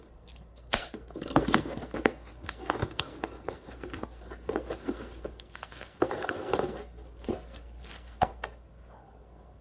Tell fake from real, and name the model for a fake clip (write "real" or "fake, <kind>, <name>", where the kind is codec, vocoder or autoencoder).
fake, codec, SNAC